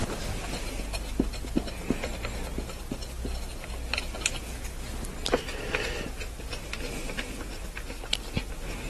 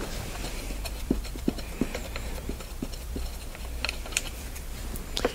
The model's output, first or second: second